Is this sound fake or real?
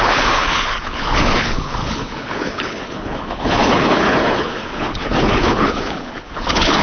fake